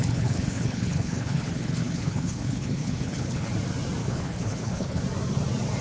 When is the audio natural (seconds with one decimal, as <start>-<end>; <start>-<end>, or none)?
3.5-4.0; 5.0-5.8